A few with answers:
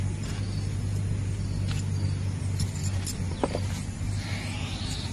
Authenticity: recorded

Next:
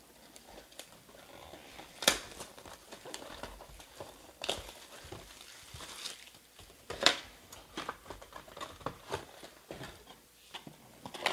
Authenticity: remade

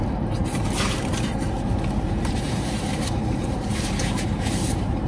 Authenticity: remade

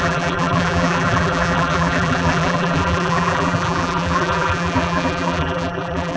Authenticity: remade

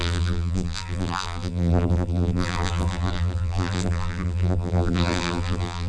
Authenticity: remade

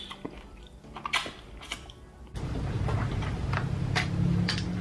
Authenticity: remade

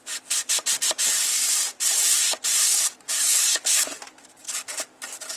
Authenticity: remade